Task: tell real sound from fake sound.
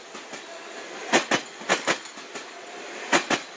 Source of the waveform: real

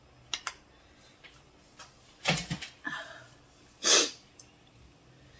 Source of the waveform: real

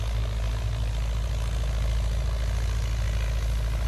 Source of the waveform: real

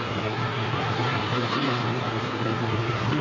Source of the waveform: fake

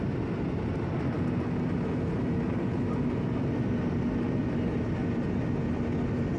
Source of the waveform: real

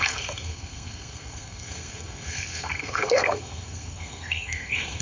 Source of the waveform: fake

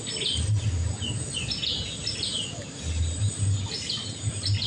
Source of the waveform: real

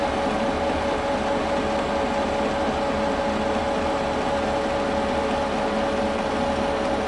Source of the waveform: real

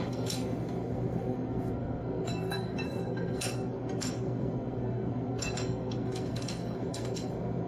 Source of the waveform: fake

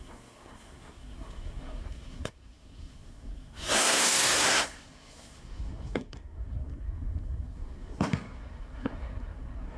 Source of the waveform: fake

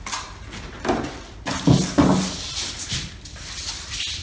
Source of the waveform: real